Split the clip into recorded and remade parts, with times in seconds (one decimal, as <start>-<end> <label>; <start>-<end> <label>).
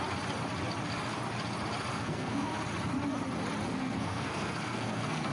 0.0-1.9 recorded; 1.9-2.5 remade; 2.5-3.7 recorded; 3.7-5.3 remade